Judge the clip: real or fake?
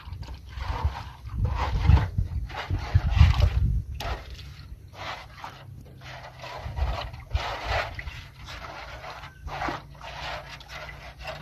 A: real